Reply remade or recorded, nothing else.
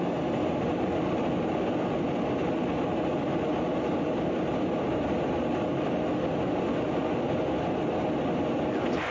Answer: recorded